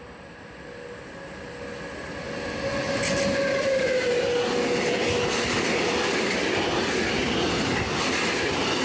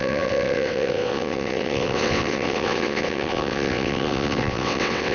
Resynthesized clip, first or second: second